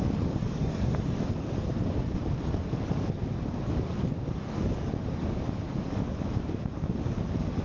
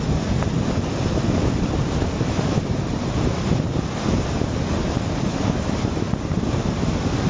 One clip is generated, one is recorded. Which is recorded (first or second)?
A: second